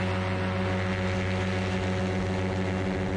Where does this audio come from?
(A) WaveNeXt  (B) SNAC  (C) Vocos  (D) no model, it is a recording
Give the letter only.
D